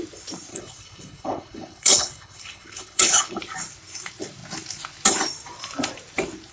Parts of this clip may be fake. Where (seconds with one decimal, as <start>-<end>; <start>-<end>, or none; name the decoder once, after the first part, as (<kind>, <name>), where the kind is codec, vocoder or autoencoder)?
0.5-3.4 (codec, HILCodec)